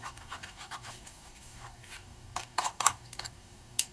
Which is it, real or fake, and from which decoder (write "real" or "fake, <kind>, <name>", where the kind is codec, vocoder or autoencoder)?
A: fake, codec, DAC